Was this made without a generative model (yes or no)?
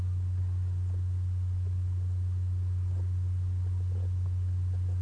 yes